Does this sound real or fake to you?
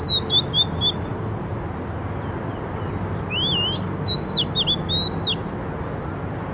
real